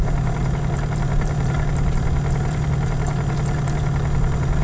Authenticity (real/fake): real